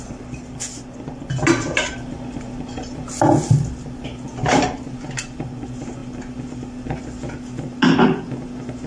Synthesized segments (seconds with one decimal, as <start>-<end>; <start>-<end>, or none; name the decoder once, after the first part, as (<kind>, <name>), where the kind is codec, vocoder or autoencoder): none